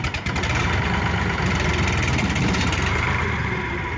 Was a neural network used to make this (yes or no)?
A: yes